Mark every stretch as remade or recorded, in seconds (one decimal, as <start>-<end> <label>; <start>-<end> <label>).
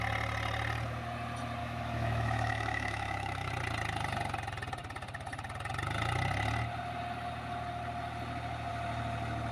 0.0-1.6 recorded; 1.6-3.5 remade; 3.5-9.5 recorded